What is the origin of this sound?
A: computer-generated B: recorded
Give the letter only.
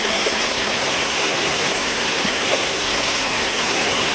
A